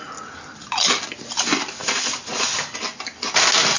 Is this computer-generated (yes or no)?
no